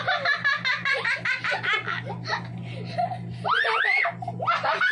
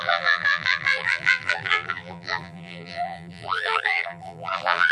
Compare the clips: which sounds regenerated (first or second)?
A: second